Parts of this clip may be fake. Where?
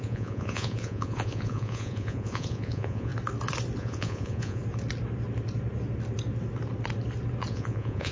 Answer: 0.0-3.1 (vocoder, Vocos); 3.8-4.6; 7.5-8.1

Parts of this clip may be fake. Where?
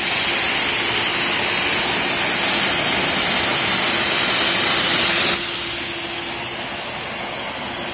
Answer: none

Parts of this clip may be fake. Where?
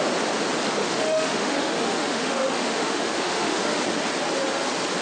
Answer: 0.8-3.8 (autoencoder, DAC-VAE)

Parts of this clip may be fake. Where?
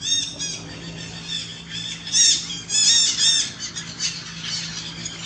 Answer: none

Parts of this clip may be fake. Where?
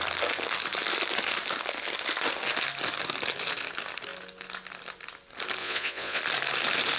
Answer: 5.6-6.2 (vocoder, Vocos)